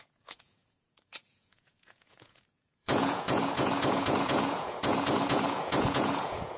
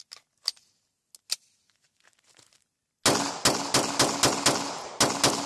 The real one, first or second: second